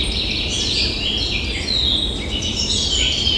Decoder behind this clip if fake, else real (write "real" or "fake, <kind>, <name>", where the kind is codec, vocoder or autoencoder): real